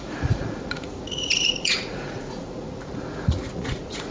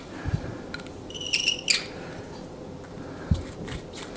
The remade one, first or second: first